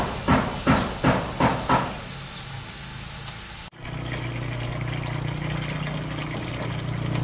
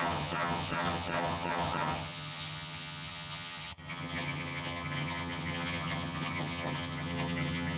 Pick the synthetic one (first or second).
second